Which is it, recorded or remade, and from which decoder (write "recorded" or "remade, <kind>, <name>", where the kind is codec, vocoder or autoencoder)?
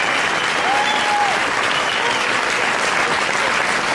recorded